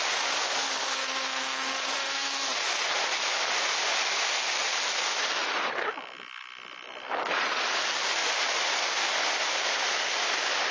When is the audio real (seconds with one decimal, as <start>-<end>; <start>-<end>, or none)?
0.0-5.4; 7.6-8.2; 9.7-10.7